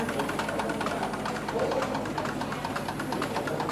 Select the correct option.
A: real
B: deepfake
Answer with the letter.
A